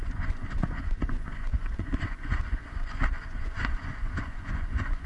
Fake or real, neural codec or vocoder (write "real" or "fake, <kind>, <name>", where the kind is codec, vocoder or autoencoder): fake, vocoder, Vocos